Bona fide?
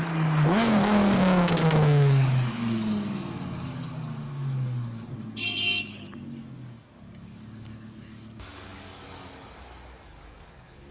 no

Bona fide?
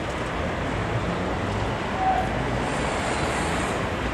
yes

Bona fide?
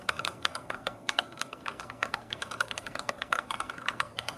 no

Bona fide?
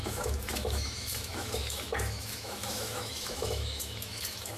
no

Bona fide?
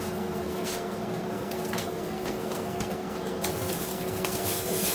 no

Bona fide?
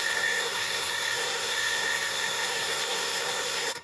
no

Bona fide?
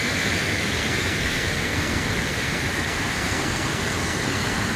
no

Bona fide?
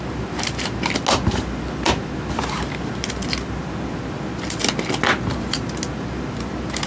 yes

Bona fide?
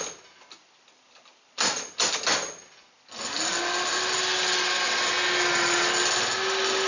yes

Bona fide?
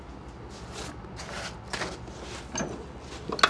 yes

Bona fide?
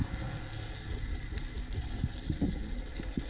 yes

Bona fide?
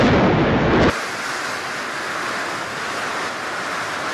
yes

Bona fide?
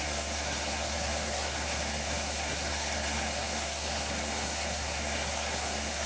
no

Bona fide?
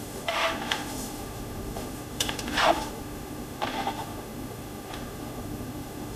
no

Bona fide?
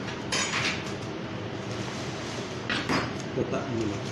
no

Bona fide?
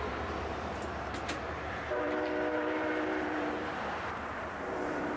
no